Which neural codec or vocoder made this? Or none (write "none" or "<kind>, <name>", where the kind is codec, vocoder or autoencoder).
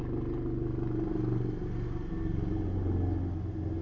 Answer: none